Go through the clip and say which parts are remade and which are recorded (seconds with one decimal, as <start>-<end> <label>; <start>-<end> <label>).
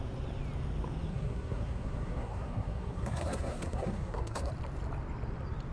0.0-1.1 recorded; 1.1-4.5 remade; 4.5-5.7 recorded